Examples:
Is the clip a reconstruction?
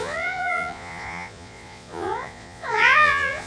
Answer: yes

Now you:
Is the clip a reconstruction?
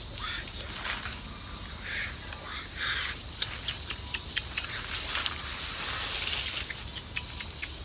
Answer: no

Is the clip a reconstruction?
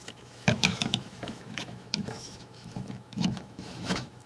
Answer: yes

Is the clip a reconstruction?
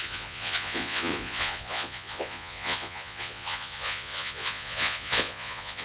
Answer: yes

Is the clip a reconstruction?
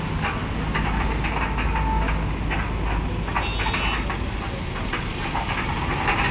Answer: no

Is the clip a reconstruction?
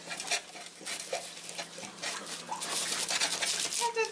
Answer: no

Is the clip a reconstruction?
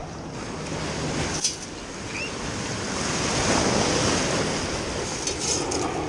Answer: no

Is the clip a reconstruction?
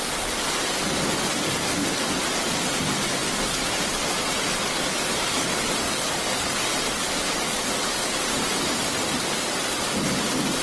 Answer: no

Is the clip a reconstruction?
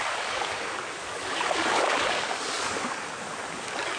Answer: yes